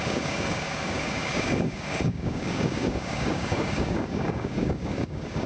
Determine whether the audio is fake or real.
fake